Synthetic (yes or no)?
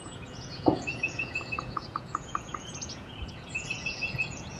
yes